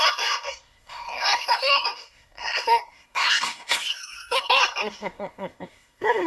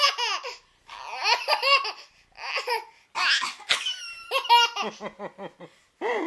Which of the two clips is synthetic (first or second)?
first